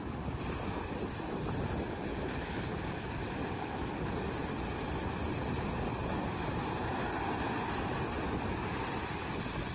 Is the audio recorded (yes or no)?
yes